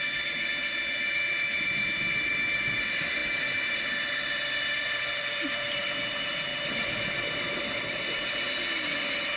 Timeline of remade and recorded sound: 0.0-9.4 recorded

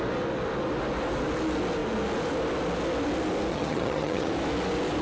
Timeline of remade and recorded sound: 0.0-3.5 recorded; 3.5-4.3 remade; 4.3-5.0 recorded

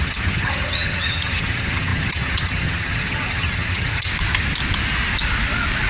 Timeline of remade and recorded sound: 0.0-4.1 remade; 4.1-5.9 recorded

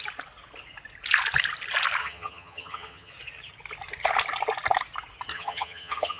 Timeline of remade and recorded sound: 0.0-2.0 recorded; 2.0-3.1 remade; 3.1-5.3 recorded; 5.3-6.2 remade

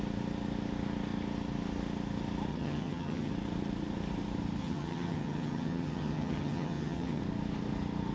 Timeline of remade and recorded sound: 0.0-2.5 recorded; 2.5-3.3 remade; 3.3-4.6 recorded; 4.6-7.2 remade; 7.2-8.1 recorded